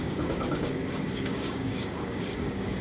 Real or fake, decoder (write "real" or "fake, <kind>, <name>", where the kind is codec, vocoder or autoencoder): fake, codec, DAC